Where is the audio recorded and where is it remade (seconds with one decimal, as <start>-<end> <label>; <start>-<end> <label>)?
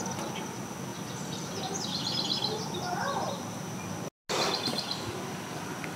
0.0-6.0 recorded